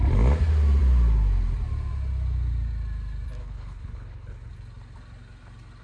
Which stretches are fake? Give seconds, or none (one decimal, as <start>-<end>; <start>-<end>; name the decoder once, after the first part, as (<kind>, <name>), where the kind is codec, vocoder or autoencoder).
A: 3.4-4.5 (codec, HILCodec)